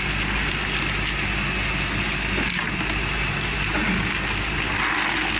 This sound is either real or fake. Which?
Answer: real